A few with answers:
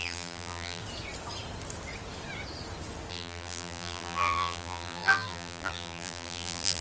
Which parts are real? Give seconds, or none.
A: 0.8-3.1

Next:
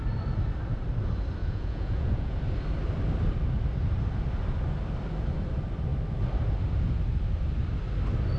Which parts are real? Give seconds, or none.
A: 0.0-1.4; 2.4-8.4

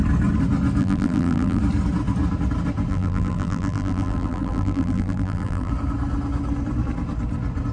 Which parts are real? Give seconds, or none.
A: 0.0-0.8; 1.6-2.9; 5.7-7.7

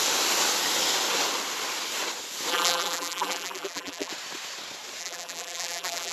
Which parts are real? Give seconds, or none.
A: 0.0-2.5; 4.1-5.0

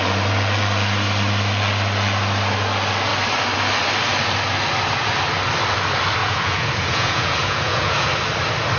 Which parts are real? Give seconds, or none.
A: 0.0-6.2; 8.1-8.8

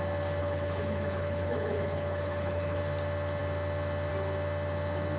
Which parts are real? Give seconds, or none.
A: 0.0-0.4; 2.8-5.2

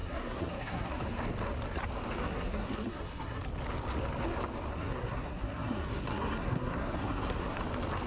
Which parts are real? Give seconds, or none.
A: 1.0-2.2; 3.4-4.7; 7.6-8.1